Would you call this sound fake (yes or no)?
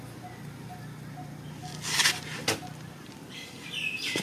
no